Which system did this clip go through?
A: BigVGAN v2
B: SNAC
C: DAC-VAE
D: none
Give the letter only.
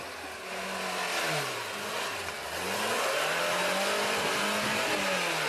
D